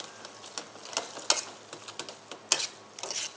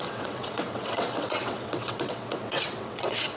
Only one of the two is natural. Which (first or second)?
first